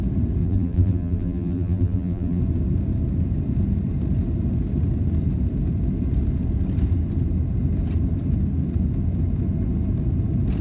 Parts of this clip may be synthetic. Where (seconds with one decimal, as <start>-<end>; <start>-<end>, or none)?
0.4-2.4